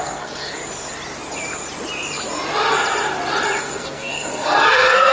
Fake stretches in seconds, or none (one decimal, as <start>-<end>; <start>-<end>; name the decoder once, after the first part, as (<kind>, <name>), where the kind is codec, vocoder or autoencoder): 0.0-0.6 (codec, SNAC); 3.6-5.1